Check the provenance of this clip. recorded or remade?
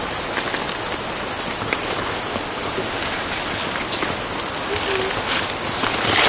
recorded